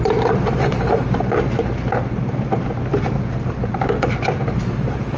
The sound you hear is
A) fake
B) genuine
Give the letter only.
A